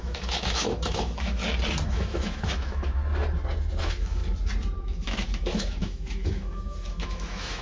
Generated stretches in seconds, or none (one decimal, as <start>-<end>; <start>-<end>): 0.0-1.4; 1.9-3.0; 3.8-4.2; 4.8-7.6